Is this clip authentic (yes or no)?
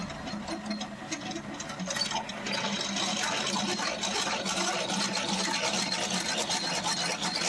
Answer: yes